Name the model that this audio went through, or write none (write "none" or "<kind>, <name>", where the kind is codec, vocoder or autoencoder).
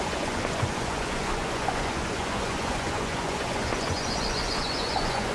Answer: vocoder, Vocos